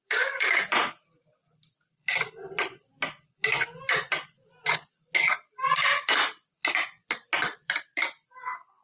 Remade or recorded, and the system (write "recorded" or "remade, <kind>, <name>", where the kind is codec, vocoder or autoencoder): remade, vocoder, BigVGAN v2